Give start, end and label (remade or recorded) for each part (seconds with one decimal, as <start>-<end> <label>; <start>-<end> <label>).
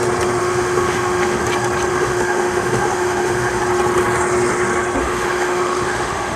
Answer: 0.0-0.4 recorded; 0.4-1.4 remade; 1.4-1.9 recorded; 1.9-3.6 remade; 3.6-5.0 recorded; 5.0-6.4 remade